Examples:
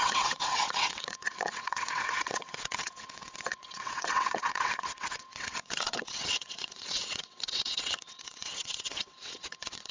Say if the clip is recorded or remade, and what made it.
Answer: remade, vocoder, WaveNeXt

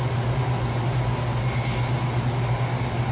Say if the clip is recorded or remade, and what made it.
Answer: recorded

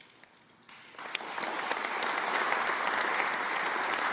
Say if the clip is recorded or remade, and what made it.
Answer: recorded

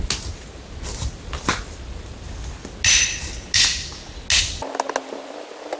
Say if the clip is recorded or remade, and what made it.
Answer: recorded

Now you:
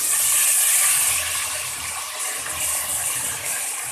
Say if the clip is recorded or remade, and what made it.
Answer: recorded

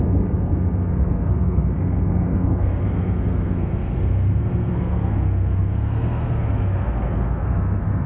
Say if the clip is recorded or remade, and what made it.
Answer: remade, codec, SNAC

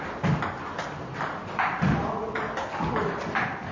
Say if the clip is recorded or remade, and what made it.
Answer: recorded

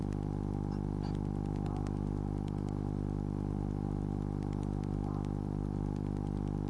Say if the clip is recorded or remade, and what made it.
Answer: recorded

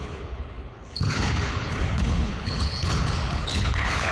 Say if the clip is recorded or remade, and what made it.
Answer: remade, codec, HILCodec